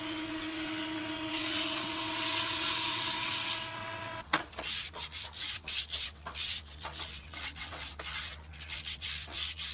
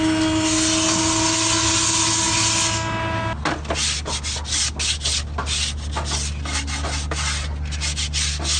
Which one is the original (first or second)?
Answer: second